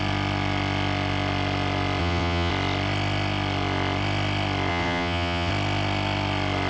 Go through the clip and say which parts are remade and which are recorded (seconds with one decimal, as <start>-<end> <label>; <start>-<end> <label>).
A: 0.0-2.0 recorded; 2.0-2.5 remade; 2.5-4.7 recorded; 4.7-5.5 remade; 5.5-6.7 recorded